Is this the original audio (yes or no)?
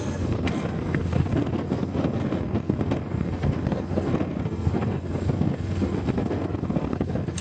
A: no